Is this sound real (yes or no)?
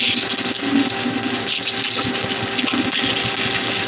yes